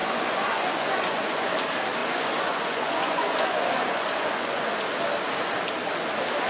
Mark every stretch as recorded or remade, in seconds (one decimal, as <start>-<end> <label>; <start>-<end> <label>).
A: 0.0-1.5 remade; 1.5-2.0 recorded; 2.0-4.7 remade; 4.7-6.5 recorded